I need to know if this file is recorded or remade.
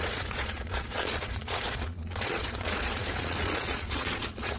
remade